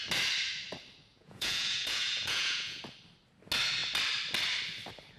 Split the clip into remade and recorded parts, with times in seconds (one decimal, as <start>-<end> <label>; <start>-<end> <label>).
0.0-1.1 recorded; 1.1-2.8 remade; 2.8-5.2 recorded